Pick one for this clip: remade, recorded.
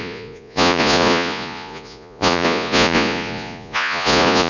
remade